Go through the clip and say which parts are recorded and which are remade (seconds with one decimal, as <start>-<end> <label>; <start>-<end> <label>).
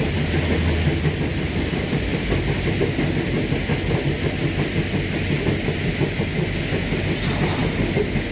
0.0-8.3 recorded